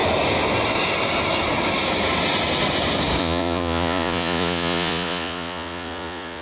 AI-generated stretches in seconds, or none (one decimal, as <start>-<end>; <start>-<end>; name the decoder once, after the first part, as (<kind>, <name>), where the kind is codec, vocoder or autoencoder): 3.2-6.4 (vocoder, Vocos)